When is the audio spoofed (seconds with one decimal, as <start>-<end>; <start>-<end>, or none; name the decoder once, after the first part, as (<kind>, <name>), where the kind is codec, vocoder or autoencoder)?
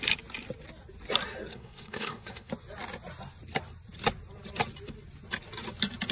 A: 1.5-2.5 (codec, SNAC)